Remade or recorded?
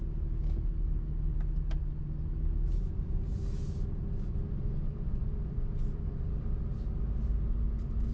recorded